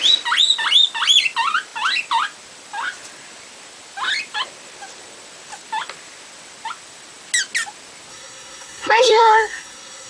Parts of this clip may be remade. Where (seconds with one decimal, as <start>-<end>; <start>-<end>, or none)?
8.1-10.1